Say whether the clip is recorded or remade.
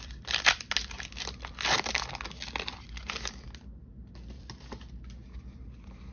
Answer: recorded